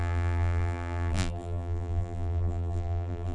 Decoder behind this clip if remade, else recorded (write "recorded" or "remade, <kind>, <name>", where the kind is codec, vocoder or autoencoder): remade, vocoder, BigVGAN v2